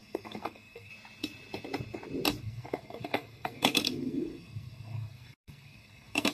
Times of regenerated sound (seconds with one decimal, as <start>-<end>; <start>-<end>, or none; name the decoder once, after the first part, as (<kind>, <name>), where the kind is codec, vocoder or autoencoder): 0.0-0.9 (codec, SNAC); 2.4-6.3